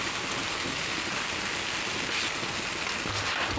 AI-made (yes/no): no